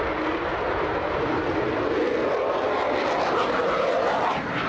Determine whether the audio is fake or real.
real